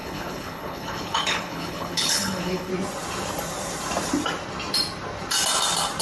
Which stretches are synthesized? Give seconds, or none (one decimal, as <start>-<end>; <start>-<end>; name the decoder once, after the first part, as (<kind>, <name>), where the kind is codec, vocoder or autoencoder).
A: 0.0-2.7 (codec, HILCodec)

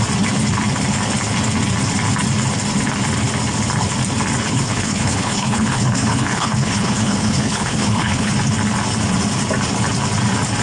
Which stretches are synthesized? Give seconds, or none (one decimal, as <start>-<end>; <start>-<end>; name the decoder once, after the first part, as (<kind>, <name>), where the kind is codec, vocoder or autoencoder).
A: 4.4-8.3 (codec, HILCodec)

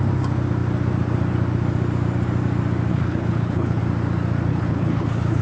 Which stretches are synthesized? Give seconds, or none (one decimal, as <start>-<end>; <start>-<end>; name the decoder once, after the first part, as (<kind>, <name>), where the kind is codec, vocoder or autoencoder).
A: 2.9-3.8 (codec, HILCodec); 4.5-5.4

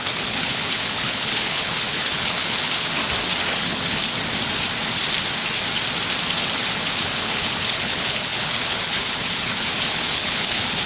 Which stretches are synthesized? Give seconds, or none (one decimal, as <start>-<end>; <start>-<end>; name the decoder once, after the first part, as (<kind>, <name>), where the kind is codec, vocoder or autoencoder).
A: 0.0-3.0 (codec, HILCodec); 3.5-4.0; 6.7-10.9

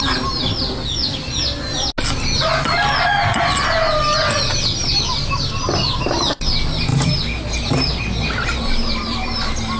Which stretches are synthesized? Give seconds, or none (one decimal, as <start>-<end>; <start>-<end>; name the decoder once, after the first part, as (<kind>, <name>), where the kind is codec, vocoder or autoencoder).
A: none

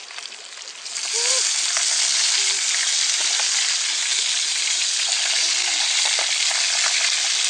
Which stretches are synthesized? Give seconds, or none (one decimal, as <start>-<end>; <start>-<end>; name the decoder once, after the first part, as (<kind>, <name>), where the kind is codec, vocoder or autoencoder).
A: none

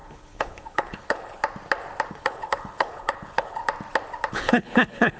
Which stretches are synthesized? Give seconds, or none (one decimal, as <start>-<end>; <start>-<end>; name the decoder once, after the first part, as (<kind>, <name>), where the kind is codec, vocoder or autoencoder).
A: 0.0-1.4 (codec, HILCodec); 2.1-3.6; 4.3-5.2